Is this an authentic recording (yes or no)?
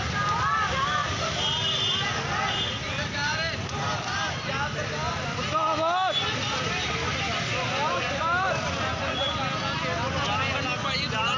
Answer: yes